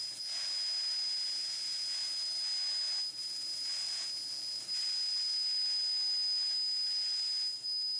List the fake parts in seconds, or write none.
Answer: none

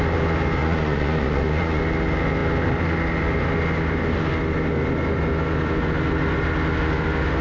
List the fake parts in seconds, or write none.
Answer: 0.6-1.8 (vocoder, Vocos)